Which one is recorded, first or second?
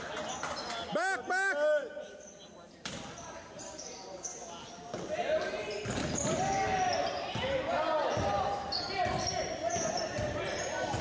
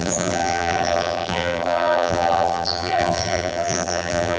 first